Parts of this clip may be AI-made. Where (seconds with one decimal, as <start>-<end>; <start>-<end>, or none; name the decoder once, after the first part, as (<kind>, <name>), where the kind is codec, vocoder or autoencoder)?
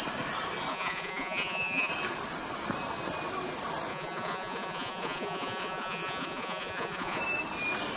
0.7-1.9 (vocoder, Vocos); 3.9-7.2